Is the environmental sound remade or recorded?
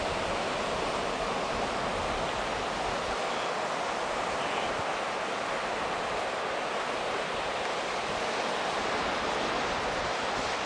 recorded